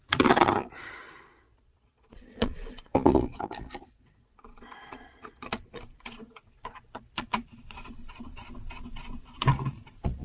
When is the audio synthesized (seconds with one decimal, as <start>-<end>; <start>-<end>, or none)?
0.0-10.2